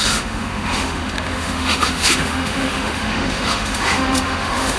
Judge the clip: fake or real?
fake